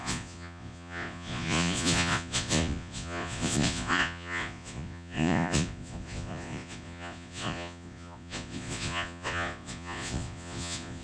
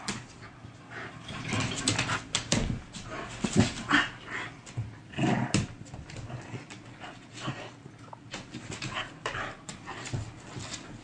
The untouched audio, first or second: second